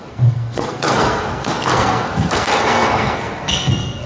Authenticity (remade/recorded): remade